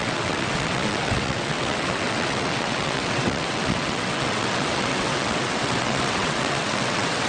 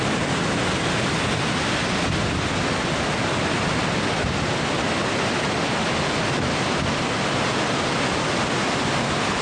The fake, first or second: first